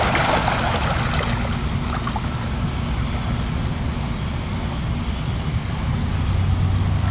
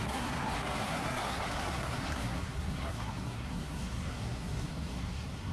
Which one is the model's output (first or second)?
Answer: second